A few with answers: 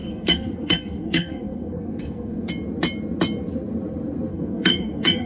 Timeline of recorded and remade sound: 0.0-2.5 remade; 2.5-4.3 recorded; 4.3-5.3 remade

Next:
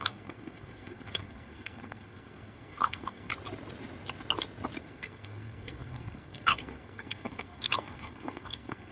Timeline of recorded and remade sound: 0.0-3.3 remade; 3.3-4.8 recorded; 4.8-8.9 remade

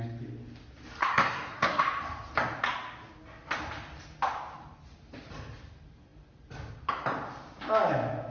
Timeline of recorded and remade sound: 0.0-1.0 recorded; 1.0-1.8 remade; 1.8-8.3 recorded

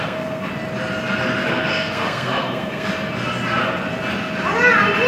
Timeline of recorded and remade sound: 0.0-0.5 remade; 0.5-1.5 recorded; 1.5-2.9 remade; 2.9-5.1 recorded